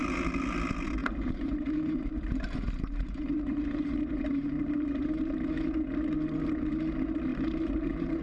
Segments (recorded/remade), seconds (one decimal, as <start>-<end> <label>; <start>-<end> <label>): 0.0-1.0 recorded; 1.0-5.1 remade; 5.1-7.3 recorded; 7.3-8.2 remade

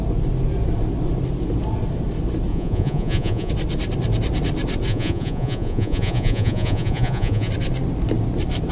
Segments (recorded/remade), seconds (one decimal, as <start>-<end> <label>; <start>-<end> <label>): 0.0-2.5 recorded; 2.5-3.5 remade; 3.5-4.9 recorded; 4.9-7.5 remade; 7.5-8.7 recorded

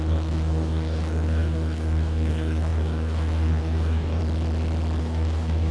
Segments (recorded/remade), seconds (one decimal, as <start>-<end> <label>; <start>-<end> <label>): 0.0-4.2 remade; 4.2-5.0 recorded; 5.0-5.7 remade

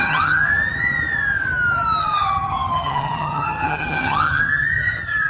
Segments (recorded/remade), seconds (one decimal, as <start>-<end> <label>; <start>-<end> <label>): 0.0-0.5 remade; 0.5-2.0 recorded; 2.0-5.3 remade

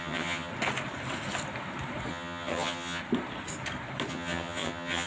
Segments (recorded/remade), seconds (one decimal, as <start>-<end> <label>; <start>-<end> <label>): 0.0-0.5 remade; 0.5-2.1 recorded; 2.1-3.0 remade; 3.0-4.1 recorded; 4.1-5.1 remade

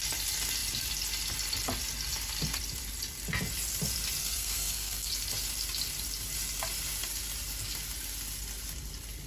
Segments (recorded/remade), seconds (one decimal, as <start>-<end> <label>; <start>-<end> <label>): 0.0-4.2 recorded; 4.2-5.1 remade; 5.1-9.3 recorded

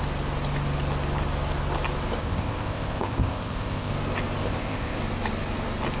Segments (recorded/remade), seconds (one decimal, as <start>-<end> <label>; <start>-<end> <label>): 0.0-2.2 recorded; 2.2-3.9 remade; 3.9-4.4 recorded; 4.4-5.0 remade; 5.0-6.0 recorded